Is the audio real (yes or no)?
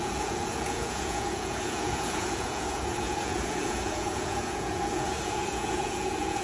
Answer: no